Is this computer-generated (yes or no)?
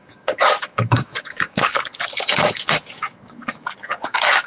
yes